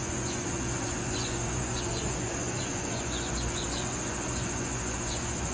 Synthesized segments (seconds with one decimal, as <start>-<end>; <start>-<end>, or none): 0.0-5.5